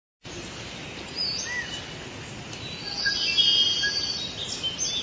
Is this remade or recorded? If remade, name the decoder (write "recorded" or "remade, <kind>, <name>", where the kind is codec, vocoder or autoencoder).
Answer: recorded